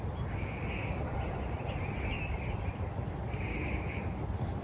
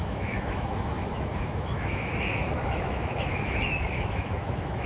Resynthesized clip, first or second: second